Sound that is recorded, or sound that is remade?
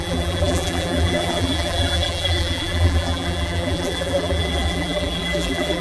remade